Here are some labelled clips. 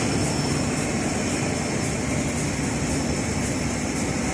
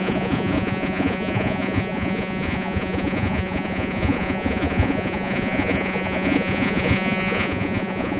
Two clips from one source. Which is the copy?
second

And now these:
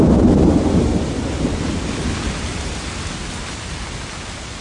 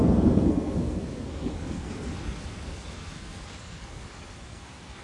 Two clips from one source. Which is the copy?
second